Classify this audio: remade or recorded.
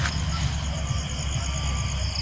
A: recorded